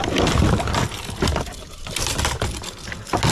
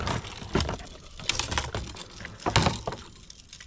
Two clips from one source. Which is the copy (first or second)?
first